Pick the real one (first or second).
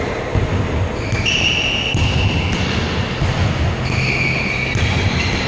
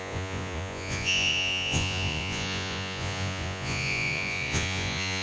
first